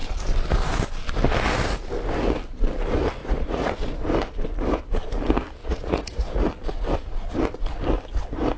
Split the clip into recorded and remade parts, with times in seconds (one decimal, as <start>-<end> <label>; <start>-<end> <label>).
0.0-3.2 recorded; 3.2-3.7 remade; 3.7-5.6 recorded; 5.6-6.4 remade; 6.4-8.6 recorded